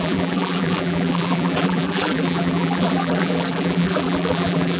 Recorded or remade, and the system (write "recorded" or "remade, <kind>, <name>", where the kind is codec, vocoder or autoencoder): remade, vocoder, BigVGAN v2